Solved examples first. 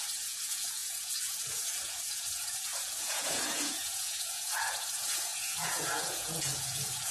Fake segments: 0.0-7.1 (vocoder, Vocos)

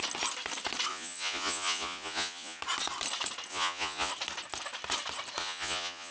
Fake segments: 0.9-2.6 (vocoder, Vocos); 3.5-4.1; 5.4-6.1

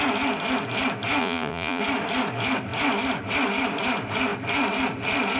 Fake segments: 1.2-1.8 (vocoder, Vocos)

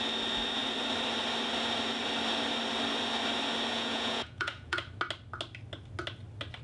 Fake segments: 3.7-4.8 (vocoder, Vocos)

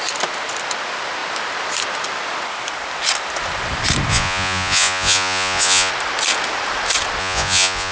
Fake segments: 4.1-5.9 (vocoder, Vocos); 7.2-7.9

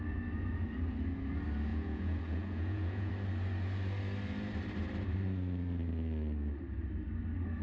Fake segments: 1.7-3.1 (vocoder, Vocos)